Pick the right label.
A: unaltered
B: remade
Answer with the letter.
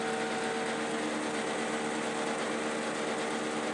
A